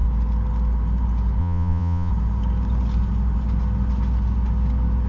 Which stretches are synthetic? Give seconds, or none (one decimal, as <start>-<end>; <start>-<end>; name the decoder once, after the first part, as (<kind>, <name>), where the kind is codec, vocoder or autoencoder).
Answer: 1.4-2.1 (vocoder, Vocos)